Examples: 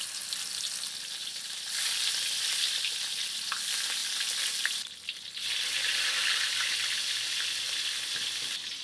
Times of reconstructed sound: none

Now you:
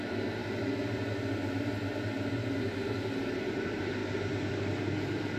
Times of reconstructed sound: none

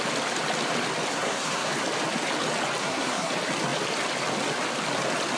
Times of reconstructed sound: 1.1-1.7 (codec, SNAC); 2.8-3.3

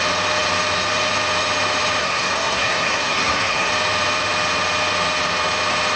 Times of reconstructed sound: 2.0-3.7 (codec, SNAC)